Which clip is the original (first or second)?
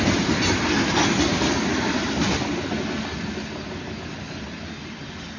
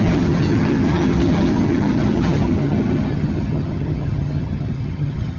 first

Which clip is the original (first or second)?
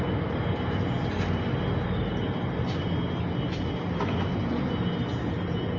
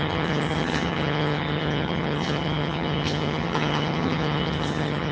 first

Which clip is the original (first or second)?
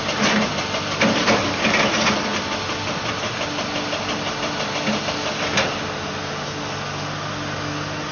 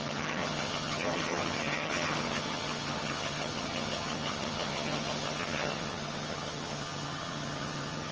first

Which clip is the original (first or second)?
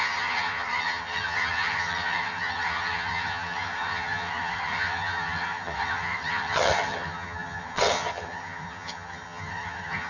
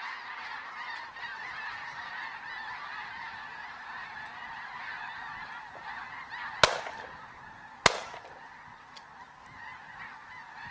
second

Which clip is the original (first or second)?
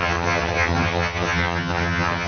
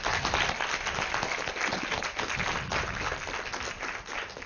second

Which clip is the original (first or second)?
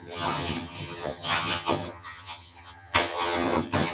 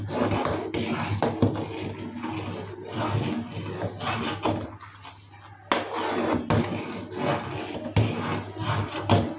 second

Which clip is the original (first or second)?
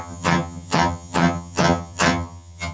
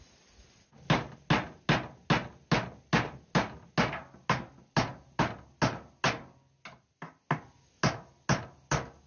second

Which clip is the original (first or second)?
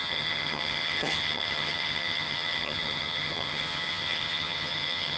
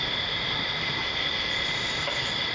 second